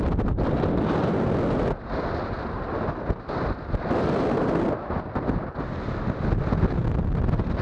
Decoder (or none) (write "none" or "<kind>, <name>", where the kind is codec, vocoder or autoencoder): none